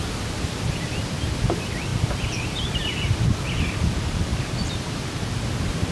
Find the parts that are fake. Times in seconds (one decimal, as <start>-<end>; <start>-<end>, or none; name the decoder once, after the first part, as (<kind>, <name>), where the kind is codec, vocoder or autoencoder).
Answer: 0.0-5.9 (vocoder, BigVGAN v2)